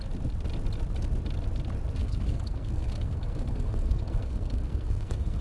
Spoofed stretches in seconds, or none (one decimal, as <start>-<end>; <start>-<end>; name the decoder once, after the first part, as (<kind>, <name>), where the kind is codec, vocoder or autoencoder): 2.0-5.4 (codec, SNAC)